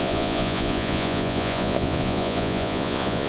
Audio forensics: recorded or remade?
remade